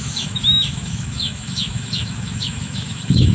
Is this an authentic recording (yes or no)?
no